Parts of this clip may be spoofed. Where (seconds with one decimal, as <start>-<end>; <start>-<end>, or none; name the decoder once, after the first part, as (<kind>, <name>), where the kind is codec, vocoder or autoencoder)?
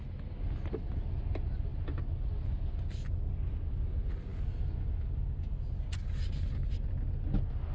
none